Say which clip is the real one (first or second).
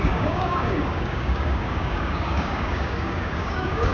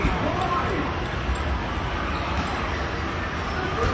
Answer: second